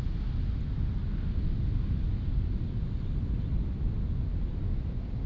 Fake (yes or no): no